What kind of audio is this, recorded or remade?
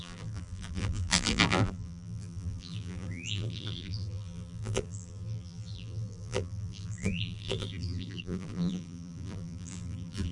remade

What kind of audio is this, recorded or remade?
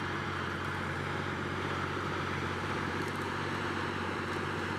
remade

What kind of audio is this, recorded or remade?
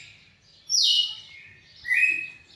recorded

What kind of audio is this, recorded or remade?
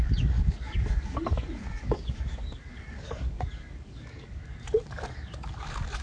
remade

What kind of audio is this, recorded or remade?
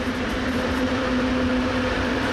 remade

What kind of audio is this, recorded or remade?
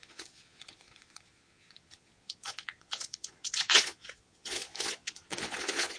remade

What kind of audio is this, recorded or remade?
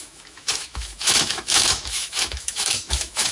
remade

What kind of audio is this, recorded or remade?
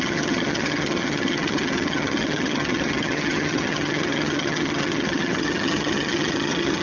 remade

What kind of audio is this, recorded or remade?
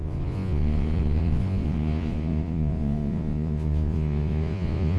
remade